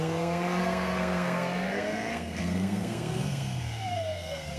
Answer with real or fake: fake